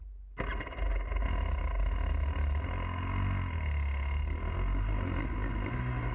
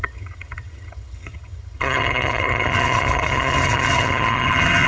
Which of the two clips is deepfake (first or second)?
second